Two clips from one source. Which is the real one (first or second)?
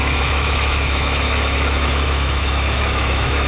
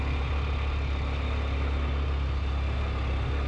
second